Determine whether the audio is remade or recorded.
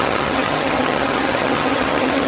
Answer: remade